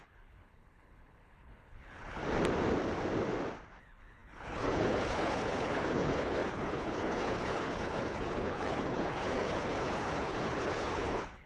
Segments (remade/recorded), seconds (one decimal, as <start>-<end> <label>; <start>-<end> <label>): 0.0-2.2 remade; 2.2-3.8 recorded; 3.8-11.5 remade